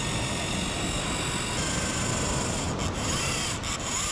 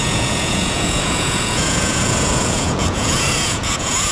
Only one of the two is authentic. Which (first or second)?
first